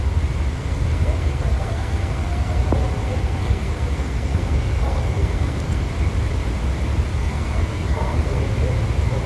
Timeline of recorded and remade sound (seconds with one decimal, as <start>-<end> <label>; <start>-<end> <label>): 0.0-0.5 recorded; 0.5-2.6 remade; 2.6-3.0 recorded; 3.0-5.9 remade; 5.9-7.1 recorded; 7.1-8.4 remade; 8.4-9.3 recorded